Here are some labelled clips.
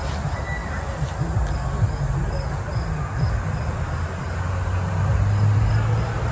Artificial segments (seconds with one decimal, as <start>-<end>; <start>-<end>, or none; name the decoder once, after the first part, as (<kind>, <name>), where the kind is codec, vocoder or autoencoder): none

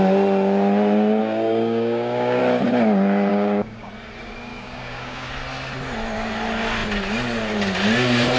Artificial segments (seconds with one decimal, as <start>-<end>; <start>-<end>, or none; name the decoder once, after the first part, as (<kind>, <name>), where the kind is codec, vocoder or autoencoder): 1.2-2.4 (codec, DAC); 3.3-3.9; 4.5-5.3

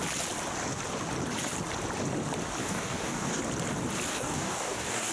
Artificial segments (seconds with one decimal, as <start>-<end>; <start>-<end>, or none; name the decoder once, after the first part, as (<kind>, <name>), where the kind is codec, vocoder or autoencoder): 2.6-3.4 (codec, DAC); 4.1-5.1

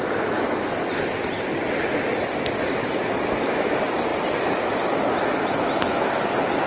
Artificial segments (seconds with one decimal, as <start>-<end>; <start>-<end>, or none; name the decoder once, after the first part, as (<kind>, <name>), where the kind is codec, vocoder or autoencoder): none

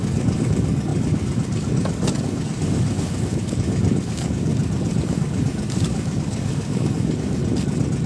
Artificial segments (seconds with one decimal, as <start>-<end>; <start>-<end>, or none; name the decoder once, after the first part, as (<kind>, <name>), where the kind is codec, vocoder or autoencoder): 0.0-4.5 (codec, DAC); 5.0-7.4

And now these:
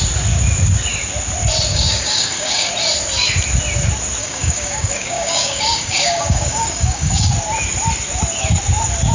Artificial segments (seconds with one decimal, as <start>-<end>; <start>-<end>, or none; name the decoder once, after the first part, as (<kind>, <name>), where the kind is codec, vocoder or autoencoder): 1.7-2.7 (codec, DAC); 4.2-7.3